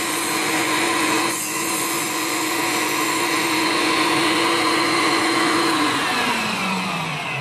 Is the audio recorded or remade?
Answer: remade